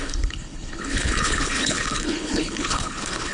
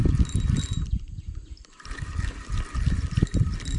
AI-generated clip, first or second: first